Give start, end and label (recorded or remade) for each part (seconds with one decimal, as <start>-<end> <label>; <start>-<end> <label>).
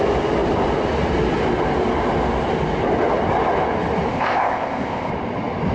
0.0-4.1 recorded; 4.1-5.1 remade; 5.1-5.7 recorded